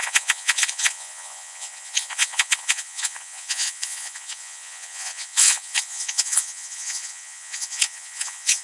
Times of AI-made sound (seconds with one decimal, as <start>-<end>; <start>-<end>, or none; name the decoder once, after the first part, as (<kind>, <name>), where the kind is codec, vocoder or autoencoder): 0.0-8.6 (vocoder, Vocos)